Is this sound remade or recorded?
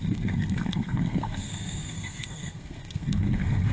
remade